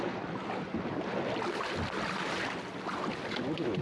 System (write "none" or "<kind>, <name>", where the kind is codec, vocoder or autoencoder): none